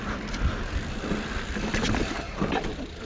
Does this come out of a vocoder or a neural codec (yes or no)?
no